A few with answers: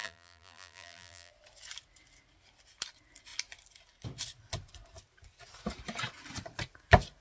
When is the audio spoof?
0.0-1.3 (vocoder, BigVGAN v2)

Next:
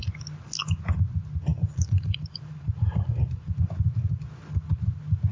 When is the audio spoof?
1.5-3.5 (vocoder, BigVGAN v2)

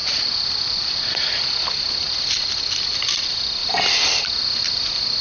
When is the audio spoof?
3.6-4.2 (vocoder, BigVGAN v2)

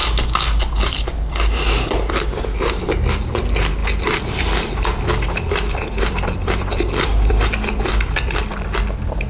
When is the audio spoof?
3.8-8.5 (vocoder, BigVGAN v2)

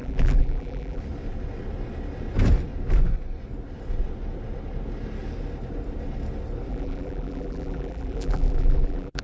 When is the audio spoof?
0.0-1.0 (vocoder, BigVGAN v2); 6.7-9.2

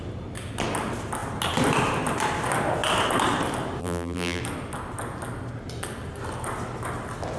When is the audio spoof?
3.8-4.4 (vocoder, BigVGAN v2)